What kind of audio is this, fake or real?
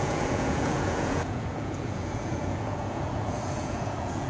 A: fake